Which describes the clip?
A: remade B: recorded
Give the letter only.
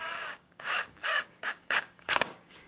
A